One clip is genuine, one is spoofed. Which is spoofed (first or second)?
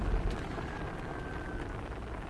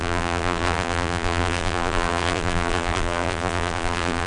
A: second